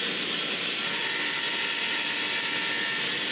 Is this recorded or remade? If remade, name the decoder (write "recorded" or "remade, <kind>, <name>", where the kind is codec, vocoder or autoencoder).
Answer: recorded